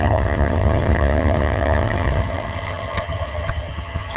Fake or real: fake